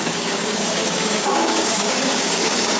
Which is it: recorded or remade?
remade